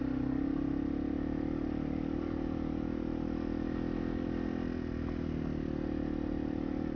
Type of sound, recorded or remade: recorded